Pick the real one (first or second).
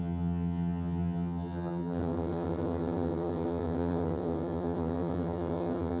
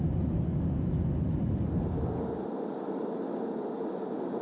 second